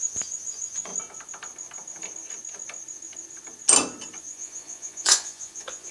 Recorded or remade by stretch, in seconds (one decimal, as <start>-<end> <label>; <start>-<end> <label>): 0.0-0.9 remade; 0.9-4.2 recorded; 4.2-5.9 remade